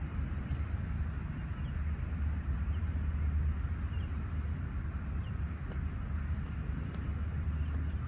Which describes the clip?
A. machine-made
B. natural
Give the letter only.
B